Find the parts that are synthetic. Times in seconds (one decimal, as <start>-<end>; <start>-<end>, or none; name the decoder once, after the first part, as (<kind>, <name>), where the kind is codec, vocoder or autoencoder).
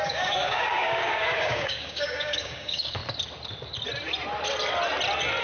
0.0-3.0 (codec, DAC)